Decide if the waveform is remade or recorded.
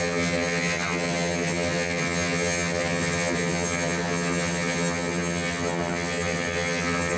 remade